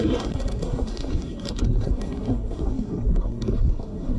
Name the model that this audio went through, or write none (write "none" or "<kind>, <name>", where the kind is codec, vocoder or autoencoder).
codec, SNAC